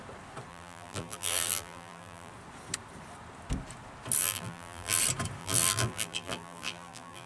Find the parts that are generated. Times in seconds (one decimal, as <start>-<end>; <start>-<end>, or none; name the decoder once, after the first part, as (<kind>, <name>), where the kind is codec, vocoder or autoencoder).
0.5-2.3 (vocoder, BigVGAN v2); 4.2-5.0; 5.4-7.3